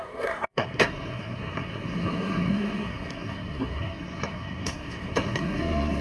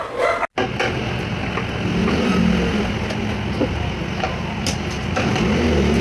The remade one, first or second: first